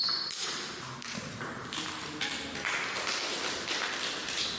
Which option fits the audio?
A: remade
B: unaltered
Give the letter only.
B